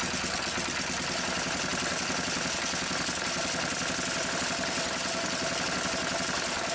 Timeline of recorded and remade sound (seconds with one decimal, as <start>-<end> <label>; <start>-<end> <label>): 0.0-6.7 recorded